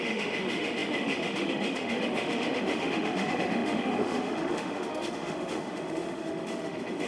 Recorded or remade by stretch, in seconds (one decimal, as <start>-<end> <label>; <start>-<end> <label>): 0.0-7.1 remade